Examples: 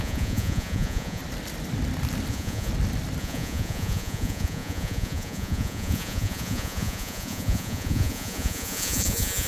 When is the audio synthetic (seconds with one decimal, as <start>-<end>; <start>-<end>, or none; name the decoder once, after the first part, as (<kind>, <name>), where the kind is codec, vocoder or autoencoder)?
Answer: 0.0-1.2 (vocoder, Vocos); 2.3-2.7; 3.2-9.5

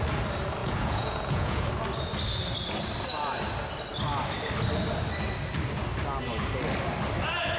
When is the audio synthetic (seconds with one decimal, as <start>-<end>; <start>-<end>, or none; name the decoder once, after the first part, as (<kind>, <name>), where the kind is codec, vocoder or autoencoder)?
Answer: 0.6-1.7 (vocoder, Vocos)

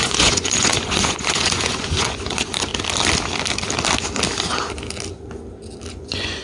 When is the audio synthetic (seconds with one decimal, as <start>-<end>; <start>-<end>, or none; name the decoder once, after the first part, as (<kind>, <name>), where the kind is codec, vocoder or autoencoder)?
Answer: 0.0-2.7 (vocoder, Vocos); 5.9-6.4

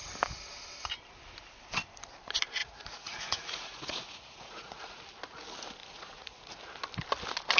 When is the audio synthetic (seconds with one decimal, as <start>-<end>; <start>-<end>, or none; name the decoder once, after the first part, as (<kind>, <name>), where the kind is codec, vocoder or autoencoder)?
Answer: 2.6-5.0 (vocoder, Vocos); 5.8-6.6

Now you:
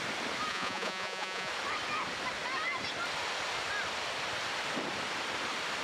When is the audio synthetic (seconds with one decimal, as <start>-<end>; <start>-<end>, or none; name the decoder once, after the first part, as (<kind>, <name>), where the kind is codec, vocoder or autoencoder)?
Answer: 0.5-1.5 (vocoder, Vocos)